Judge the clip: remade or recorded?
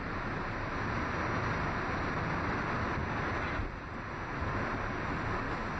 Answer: recorded